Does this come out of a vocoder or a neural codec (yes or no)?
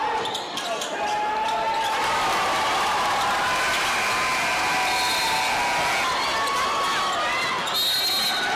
no